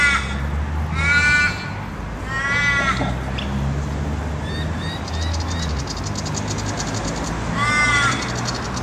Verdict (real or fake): real